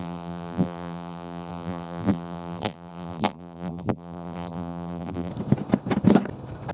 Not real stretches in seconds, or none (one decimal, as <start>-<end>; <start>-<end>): 0.0-5.3